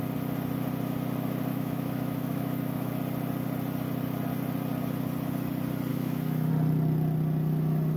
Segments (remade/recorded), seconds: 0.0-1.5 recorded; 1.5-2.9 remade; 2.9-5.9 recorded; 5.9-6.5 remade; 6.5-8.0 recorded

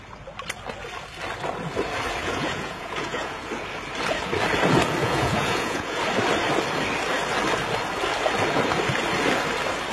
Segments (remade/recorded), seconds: 0.0-2.2 recorded; 2.2-3.5 remade; 3.5-5.0 recorded; 5.0-6.0 remade; 6.0-9.9 recorded

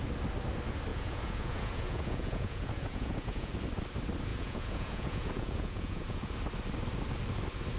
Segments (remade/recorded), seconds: 0.0-0.9 recorded; 0.9-3.5 remade; 3.5-4.3 recorded; 4.3-6.3 remade; 6.3-7.8 recorded

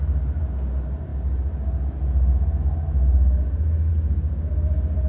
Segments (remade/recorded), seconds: 0.0-5.1 recorded